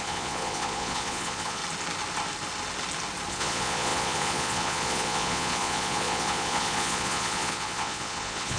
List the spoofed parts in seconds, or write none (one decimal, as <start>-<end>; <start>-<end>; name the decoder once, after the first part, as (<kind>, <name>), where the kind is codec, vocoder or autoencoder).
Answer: 0.0-1.6 (vocoder, Vocos); 3.3-8.6